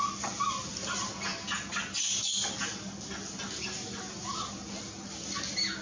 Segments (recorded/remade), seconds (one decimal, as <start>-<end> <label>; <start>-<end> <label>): 0.0-5.8 recorded